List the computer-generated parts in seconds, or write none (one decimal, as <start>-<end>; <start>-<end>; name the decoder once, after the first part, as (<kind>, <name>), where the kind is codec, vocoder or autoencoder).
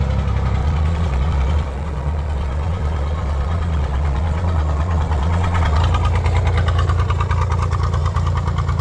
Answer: 0.6-5.8 (vocoder, Vocos)